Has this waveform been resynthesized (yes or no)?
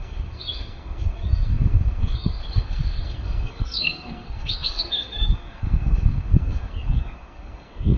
yes